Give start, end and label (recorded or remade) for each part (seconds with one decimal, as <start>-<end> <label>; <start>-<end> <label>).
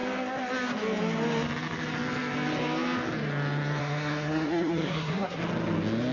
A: 0.0-3.8 recorded; 3.8-5.4 remade; 5.4-6.1 recorded